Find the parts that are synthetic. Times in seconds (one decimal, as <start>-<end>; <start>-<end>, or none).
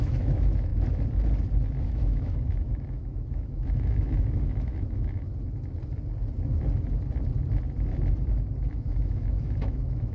0.0-0.7; 1.8-5.3; 8.7-10.1